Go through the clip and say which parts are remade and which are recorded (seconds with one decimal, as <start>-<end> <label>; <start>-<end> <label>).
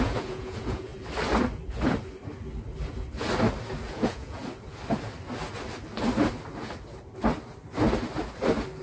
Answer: 0.0-0.9 remade; 0.9-3.9 recorded; 3.9-4.4 remade; 4.4-8.8 recorded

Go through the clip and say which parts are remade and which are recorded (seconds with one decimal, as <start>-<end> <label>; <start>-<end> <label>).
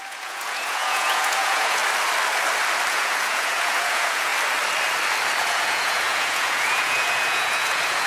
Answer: 0.0-1.8 remade; 1.8-2.9 recorded; 2.9-4.3 remade; 4.3-5.4 recorded; 5.4-8.1 remade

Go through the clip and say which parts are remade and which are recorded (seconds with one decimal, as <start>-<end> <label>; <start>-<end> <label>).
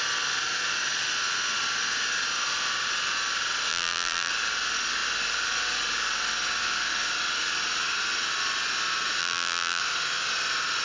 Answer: 0.0-3.7 recorded; 3.7-4.3 remade; 4.3-9.2 recorded; 9.2-9.8 remade; 9.8-10.8 recorded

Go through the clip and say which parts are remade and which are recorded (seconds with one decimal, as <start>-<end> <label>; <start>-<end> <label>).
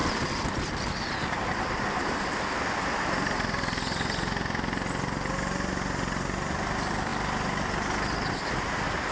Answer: 0.0-2.6 remade; 2.6-9.1 recorded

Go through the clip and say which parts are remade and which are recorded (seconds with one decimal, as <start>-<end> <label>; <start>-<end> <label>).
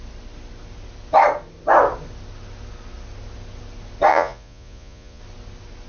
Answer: 0.0-4.1 recorded; 4.1-5.2 remade; 5.2-5.9 recorded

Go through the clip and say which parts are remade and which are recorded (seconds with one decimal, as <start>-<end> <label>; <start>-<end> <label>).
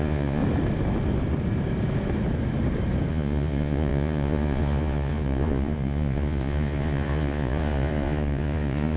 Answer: 0.0-0.4 remade; 0.4-3.1 recorded; 3.1-9.0 remade